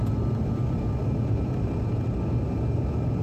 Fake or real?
real